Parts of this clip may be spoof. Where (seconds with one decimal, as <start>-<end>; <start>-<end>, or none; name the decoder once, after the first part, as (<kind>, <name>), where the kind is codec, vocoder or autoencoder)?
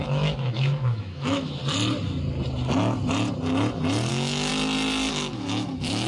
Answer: 0.0-1.6 (autoencoder, DAC-VAE); 4.1-4.5; 5.1-6.1